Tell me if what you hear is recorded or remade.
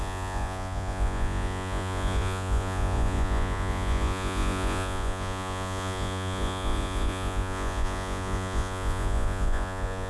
remade